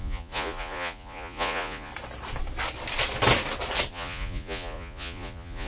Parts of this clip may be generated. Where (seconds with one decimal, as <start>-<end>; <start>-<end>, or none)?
0.0-1.9; 3.9-5.7